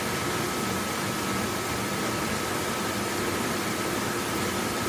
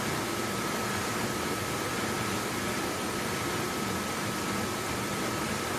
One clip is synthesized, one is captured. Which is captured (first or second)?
first